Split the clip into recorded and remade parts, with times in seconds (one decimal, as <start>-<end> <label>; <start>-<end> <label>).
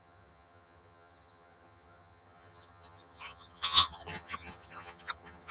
0.0-5.5 remade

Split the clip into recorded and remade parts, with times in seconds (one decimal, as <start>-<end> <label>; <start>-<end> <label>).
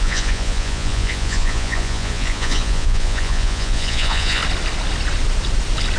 0.0-4.4 remade; 4.4-6.0 recorded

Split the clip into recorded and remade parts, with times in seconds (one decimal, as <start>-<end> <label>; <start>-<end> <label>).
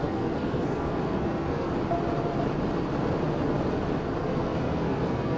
0.0-1.7 remade; 1.7-4.2 recorded; 4.2-5.4 remade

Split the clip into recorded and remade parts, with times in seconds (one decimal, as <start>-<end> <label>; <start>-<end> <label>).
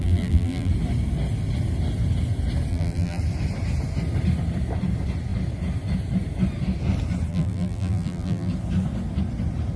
0.0-0.7 remade; 0.7-2.7 recorded; 2.7-3.2 remade; 3.2-7.3 recorded; 7.3-8.5 remade; 8.5-9.8 recorded